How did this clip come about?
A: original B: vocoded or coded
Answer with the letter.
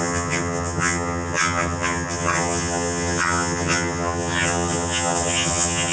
B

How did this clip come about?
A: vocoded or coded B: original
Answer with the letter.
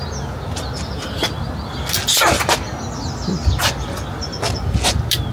B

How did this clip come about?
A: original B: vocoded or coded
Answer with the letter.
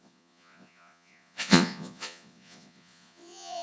B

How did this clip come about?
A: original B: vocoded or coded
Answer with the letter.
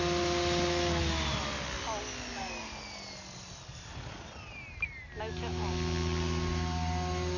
A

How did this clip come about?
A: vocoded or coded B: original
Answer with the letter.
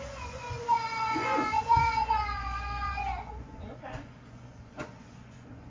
A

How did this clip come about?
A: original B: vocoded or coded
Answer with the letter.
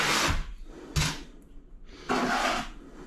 A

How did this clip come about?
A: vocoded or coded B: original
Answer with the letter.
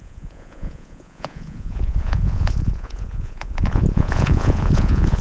A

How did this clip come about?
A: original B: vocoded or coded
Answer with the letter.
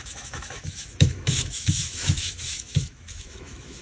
B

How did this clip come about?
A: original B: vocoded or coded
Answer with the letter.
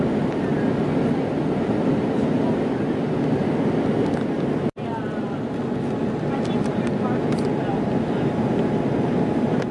A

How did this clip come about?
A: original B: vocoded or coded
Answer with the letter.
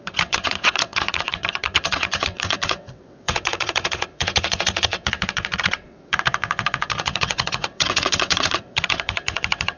B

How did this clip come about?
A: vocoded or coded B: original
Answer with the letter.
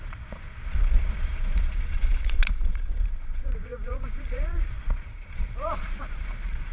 A